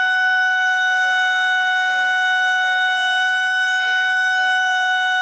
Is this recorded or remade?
remade